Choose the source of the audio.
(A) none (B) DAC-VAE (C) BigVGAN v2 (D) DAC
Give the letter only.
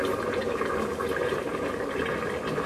C